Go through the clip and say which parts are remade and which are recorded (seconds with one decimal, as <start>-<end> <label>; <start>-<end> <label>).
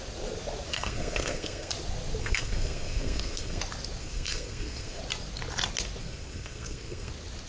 0.0-0.7 recorded; 0.7-1.7 remade; 1.7-2.2 recorded; 2.2-3.6 remade; 3.6-4.0 recorded; 4.0-5.0 remade; 5.0-6.0 recorded; 6.0-7.1 remade; 7.1-7.5 recorded